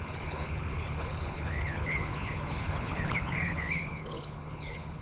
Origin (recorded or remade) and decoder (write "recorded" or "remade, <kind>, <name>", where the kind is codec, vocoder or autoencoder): remade, codec, HILCodec